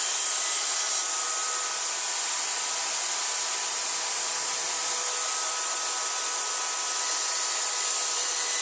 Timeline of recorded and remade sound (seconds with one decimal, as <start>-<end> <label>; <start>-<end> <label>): 0.0-8.6 recorded

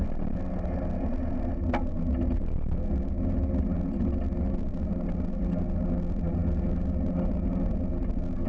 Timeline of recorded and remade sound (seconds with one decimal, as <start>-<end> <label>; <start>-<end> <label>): 0.0-8.5 recorded